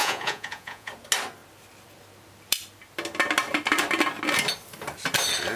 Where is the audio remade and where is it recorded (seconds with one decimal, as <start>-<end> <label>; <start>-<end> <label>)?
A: 0.0-0.9 remade; 0.9-5.6 recorded